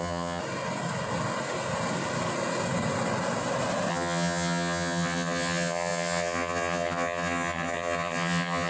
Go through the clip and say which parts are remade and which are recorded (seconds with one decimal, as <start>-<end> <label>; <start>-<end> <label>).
0.0-0.4 remade; 0.4-3.9 recorded; 3.9-8.7 remade